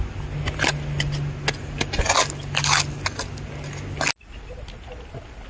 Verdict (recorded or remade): recorded